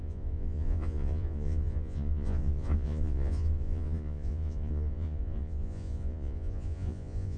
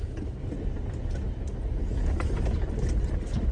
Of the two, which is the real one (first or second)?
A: second